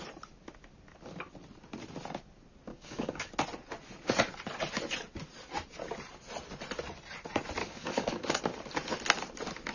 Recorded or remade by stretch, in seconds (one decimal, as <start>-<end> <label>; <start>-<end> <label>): 0.0-2.7 recorded; 2.7-3.3 remade; 3.3-7.6 recorded; 7.6-8.4 remade; 8.4-9.7 recorded

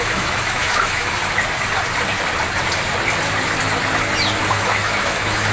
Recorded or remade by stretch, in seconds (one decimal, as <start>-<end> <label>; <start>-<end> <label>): 0.0-1.2 remade; 1.2-4.5 recorded; 4.5-5.5 remade